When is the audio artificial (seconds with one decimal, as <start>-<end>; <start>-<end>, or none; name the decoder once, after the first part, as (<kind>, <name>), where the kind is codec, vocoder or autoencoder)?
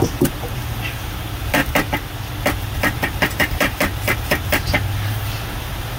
0.0-1.6 (vocoder, BigVGAN v2); 2.6-3.9; 4.5-6.0